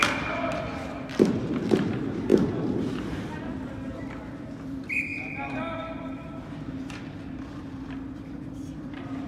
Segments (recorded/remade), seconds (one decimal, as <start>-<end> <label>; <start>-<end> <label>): 0.0-1.3 recorded; 1.3-2.3 remade; 2.3-3.4 recorded; 3.4-9.3 remade